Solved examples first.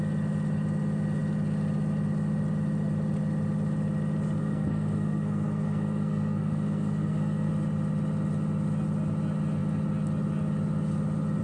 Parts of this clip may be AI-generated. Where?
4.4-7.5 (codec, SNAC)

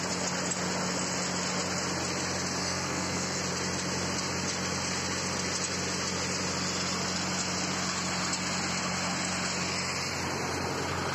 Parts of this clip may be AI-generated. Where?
2.6-3.4 (codec, SNAC)

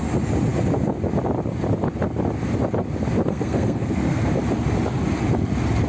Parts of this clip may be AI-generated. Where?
3.3-4.3 (codec, SNAC)

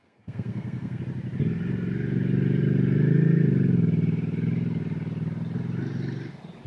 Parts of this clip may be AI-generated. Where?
0.0-1.0 (codec, SNAC)